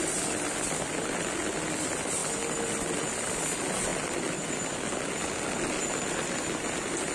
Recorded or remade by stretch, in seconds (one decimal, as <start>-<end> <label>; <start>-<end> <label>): 0.0-7.1 recorded